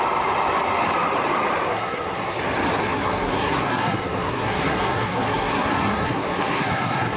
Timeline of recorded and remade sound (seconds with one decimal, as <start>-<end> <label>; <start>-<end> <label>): 0.0-1.7 recorded; 1.7-2.4 remade; 2.4-2.8 recorded; 2.8-7.2 remade